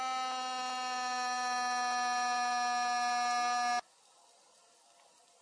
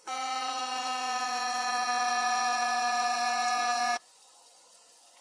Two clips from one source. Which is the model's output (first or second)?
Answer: second